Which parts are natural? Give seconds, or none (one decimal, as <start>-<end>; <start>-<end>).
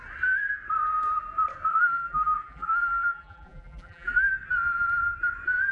0.0-1.7; 4.3-5.7